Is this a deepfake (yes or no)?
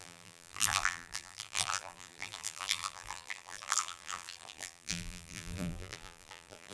yes